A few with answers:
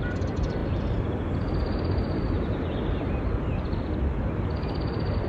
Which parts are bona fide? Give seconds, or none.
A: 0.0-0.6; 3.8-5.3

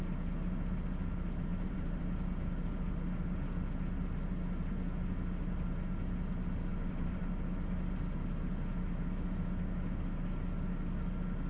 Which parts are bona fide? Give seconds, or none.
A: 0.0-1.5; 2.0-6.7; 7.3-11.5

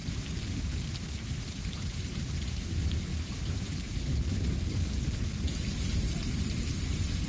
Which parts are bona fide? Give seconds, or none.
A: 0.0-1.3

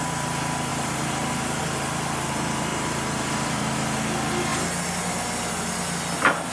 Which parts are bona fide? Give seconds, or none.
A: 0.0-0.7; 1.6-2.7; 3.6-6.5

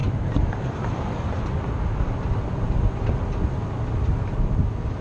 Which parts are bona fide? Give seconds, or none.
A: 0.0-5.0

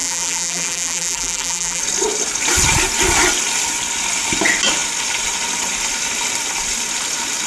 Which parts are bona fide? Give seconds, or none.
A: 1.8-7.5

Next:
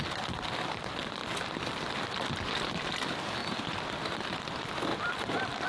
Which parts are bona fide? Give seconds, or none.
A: 1.2-2.1; 3.4-4.0; 4.9-5.7